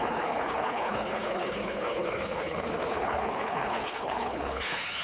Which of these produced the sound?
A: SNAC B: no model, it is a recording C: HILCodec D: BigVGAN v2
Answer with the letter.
C